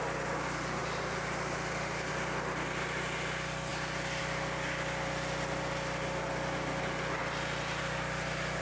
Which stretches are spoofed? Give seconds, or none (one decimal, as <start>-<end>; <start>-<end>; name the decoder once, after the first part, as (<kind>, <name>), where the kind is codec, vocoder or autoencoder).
0.8-2.1 (vocoder, BigVGAN v2); 7.2-7.8